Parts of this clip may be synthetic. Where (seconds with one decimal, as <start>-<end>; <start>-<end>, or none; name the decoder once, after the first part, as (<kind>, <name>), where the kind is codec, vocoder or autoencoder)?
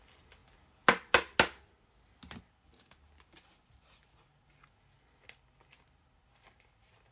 none